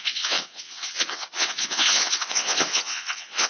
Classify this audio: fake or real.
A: fake